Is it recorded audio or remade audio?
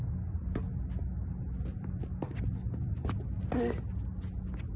recorded